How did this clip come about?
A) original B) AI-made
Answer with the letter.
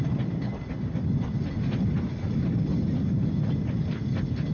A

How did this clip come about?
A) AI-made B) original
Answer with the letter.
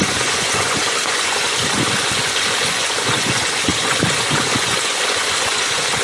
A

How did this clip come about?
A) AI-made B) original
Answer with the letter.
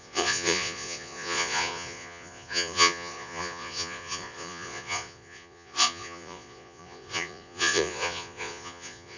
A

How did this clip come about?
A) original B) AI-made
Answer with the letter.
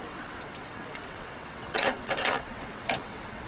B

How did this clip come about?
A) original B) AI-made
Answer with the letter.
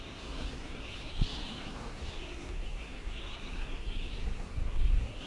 B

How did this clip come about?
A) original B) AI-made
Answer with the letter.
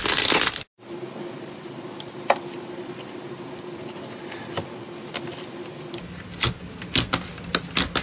A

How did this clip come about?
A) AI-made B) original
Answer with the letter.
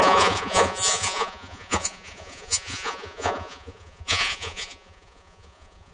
A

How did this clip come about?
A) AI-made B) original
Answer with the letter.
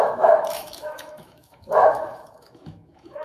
A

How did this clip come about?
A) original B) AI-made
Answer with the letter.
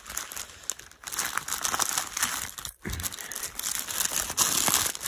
A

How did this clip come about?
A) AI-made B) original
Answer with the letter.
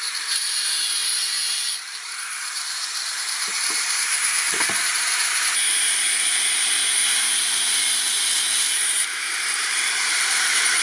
A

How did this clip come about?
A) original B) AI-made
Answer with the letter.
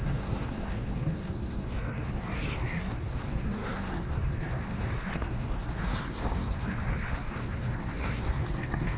B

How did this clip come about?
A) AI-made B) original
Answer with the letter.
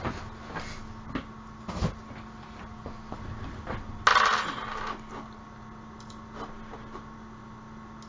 B